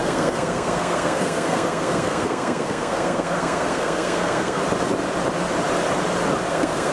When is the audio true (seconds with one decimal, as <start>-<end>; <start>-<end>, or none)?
4.6-6.5

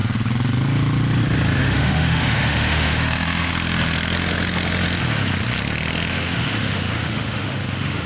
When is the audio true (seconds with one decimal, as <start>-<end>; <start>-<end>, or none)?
0.0-1.6; 3.5-6.1

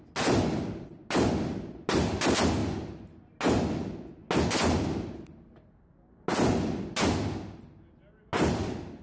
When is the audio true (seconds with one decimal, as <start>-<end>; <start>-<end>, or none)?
0.0-9.0

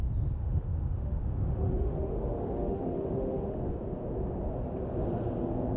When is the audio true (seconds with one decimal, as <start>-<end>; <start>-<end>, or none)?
0.0-0.4; 3.8-5.8

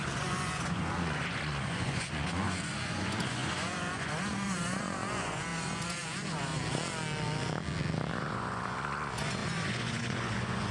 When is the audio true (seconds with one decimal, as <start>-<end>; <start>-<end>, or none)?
6.5-8.1

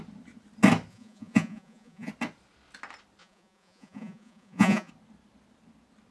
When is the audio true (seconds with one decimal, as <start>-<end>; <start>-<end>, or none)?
0.0-0.9; 2.1-3.2; 4.9-6.1

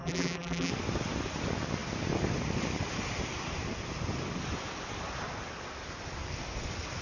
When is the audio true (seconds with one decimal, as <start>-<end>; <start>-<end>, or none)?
0.7-7.0